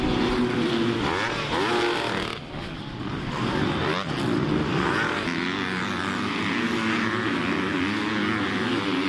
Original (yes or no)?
yes